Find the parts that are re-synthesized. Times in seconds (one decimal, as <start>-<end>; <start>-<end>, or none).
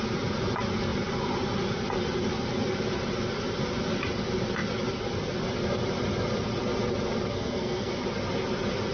7.3-7.9